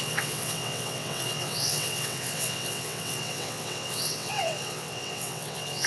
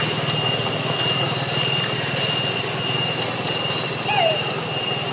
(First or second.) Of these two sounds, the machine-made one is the first